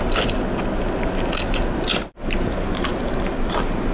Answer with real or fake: real